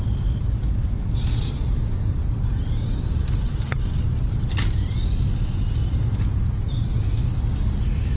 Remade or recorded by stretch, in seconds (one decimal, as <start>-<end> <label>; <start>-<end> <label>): 0.0-8.2 recorded